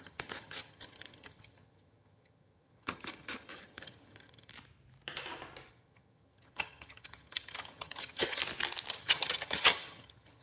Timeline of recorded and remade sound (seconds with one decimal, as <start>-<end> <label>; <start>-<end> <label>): 0.0-4.5 remade; 4.5-5.7 recorded; 5.7-8.4 remade; 8.4-8.9 recorded; 8.9-10.4 remade